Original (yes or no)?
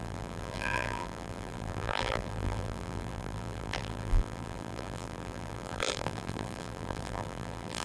no